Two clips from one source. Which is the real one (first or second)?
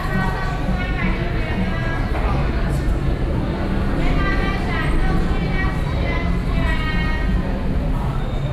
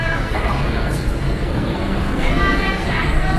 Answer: first